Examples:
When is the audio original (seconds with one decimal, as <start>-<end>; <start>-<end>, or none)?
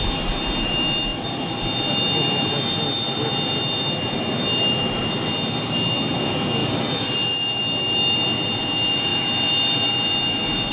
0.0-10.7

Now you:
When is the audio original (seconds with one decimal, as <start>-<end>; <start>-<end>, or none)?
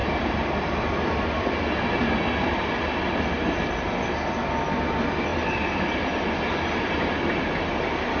0.0-8.2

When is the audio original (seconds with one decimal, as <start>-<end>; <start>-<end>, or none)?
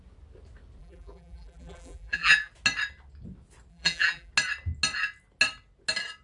0.0-0.8; 2.5-3.7; 4.3-6.2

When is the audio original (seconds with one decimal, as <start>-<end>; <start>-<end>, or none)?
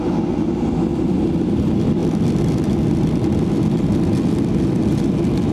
0.0-5.5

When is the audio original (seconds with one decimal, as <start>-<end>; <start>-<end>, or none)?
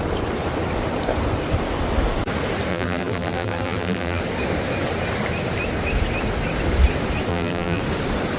0.0-2.7; 4.2-7.3; 7.8-8.4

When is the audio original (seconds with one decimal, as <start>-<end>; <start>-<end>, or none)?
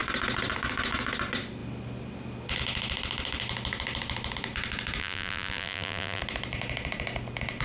0.0-5.0; 6.2-7.6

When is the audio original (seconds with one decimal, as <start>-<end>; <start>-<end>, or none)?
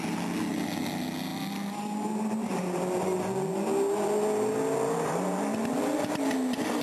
0.0-6.8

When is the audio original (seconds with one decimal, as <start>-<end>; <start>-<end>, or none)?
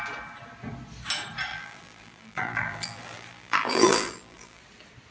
0.0-1.5; 4.6-5.1